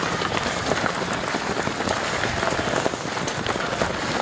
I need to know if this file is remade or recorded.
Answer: recorded